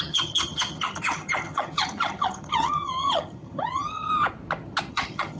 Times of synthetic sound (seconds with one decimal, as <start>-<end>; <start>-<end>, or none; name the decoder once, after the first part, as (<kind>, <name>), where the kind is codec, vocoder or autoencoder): 0.0-4.1 (vocoder, HiFi-GAN); 4.9-5.4